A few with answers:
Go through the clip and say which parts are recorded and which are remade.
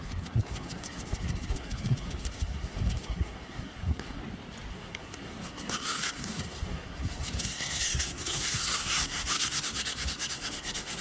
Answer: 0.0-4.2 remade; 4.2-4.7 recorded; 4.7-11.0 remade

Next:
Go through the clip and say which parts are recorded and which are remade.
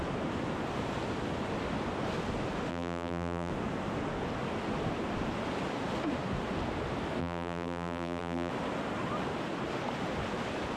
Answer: 0.0-2.7 recorded; 2.7-3.5 remade; 3.5-7.2 recorded; 7.2-8.5 remade; 8.5-10.8 recorded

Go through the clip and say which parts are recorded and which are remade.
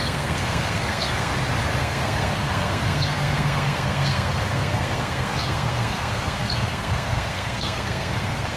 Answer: 0.0-1.3 remade; 1.3-1.8 recorded; 1.8-8.6 remade